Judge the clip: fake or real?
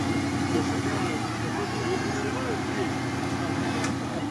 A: real